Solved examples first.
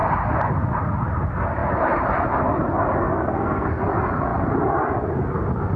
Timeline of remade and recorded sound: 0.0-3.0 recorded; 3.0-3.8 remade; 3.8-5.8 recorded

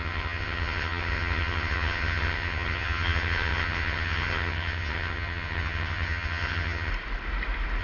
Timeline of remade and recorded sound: 0.0-6.9 remade; 6.9-7.8 recorded

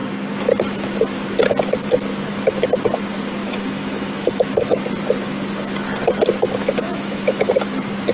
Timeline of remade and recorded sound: 0.0-3.4 recorded; 3.4-4.8 remade; 4.8-6.6 recorded; 6.6-7.5 remade; 7.5-8.1 recorded

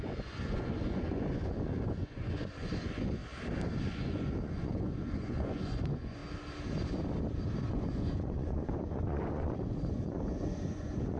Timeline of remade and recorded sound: 0.0-3.2 remade; 3.2-3.8 recorded; 3.8-6.2 remade; 6.2-7.7 recorded; 7.7-11.2 remade

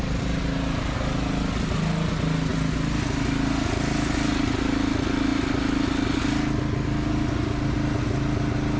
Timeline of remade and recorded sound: 0.0-2.5 recorded; 2.5-4.5 remade; 4.5-8.8 recorded